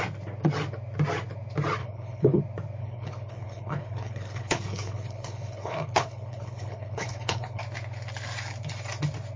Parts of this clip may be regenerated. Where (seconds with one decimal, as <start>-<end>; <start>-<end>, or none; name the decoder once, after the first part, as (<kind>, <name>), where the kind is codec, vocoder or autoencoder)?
1.8-2.4 (codec, HILCodec); 2.8-7.6